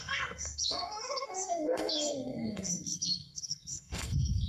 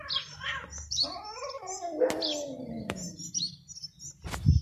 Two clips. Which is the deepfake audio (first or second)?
first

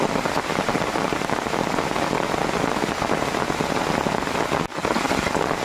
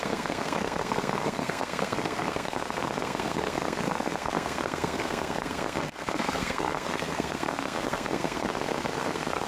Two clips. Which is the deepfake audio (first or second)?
second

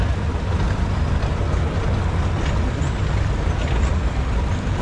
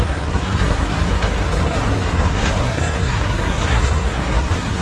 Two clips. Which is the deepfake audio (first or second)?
second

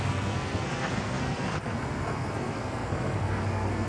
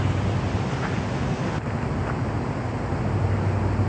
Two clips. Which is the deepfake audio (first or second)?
first